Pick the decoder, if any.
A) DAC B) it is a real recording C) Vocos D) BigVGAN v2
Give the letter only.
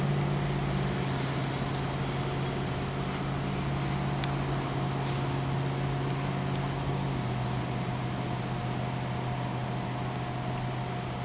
B